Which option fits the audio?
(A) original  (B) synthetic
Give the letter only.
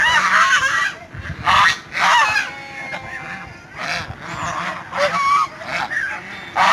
A